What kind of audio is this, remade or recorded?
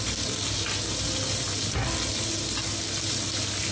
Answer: recorded